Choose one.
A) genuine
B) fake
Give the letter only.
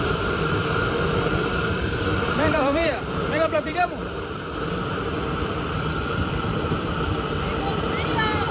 B